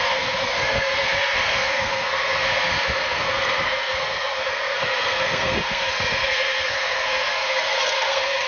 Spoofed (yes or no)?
yes